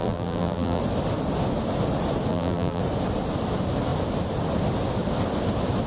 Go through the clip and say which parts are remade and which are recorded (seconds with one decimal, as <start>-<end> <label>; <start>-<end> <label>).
0.0-0.8 remade; 0.8-2.3 recorded; 2.3-2.8 remade; 2.8-5.9 recorded